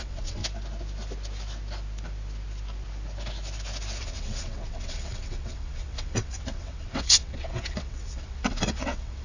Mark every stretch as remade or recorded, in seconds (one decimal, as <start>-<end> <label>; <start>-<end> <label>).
0.0-0.4 remade; 0.4-4.0 recorded; 4.0-9.2 remade